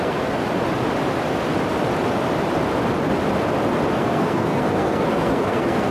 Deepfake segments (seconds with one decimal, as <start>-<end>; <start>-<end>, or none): 0.0-0.4; 3.9-5.9